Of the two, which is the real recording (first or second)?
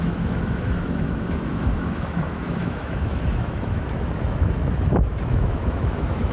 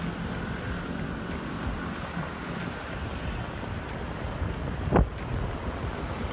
second